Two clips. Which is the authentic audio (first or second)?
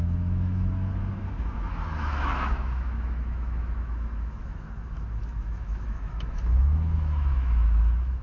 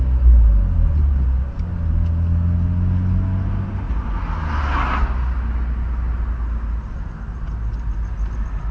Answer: second